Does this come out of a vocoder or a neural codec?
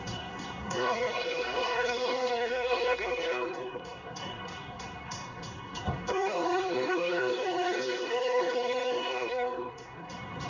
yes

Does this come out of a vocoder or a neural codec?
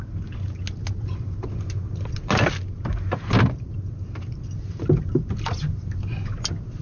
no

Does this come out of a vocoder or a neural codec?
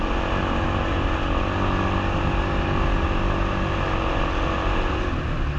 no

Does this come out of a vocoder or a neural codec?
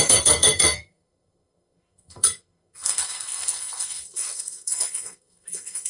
yes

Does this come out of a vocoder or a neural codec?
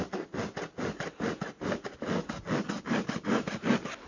no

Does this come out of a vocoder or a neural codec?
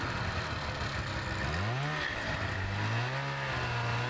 no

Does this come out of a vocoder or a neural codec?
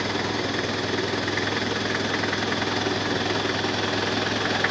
no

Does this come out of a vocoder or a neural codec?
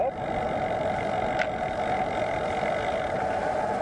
no